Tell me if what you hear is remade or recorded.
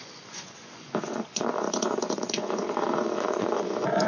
remade